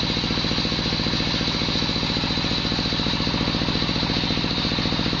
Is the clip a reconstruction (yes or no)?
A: no